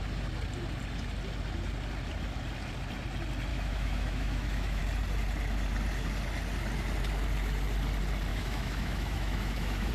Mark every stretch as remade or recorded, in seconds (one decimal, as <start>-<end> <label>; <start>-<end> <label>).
0.0-3.5 recorded; 3.5-4.8 remade; 4.8-8.3 recorded; 8.3-9.9 remade